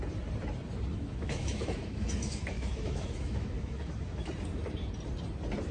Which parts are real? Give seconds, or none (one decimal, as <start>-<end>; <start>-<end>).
0.0-0.9; 4.3-5.7